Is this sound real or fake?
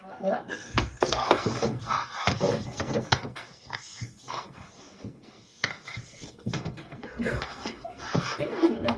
fake